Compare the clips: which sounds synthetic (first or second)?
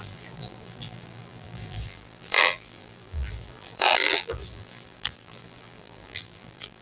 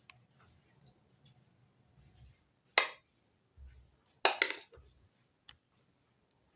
first